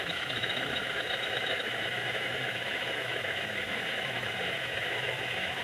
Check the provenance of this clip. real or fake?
fake